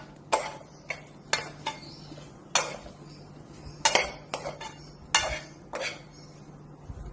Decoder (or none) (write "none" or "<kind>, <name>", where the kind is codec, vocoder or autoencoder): none